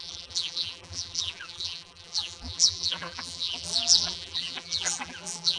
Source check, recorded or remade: remade